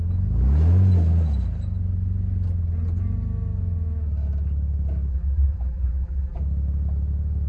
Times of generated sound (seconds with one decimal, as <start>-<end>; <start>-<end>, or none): 5.1-6.4